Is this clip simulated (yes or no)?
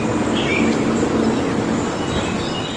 no